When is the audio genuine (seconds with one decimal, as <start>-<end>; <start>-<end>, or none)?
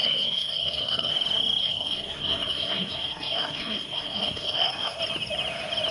1.1-1.6; 5.0-5.9